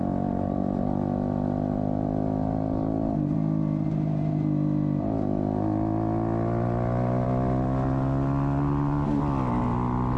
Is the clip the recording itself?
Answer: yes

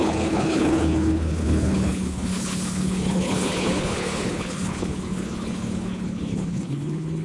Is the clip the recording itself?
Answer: no